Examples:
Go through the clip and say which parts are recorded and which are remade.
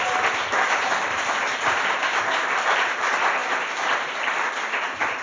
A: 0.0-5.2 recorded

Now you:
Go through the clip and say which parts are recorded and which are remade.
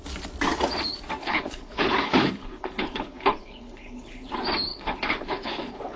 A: 0.0-1.2 recorded; 1.2-4.3 remade; 4.3-4.7 recorded; 4.7-6.0 remade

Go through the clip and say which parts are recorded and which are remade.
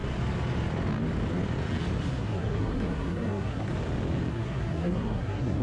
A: 0.0-2.0 recorded; 2.0-3.7 remade; 3.7-4.3 recorded; 4.3-5.6 remade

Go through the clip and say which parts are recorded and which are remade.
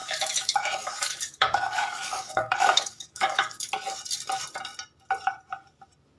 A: 0.0-3.7 remade; 3.7-6.2 recorded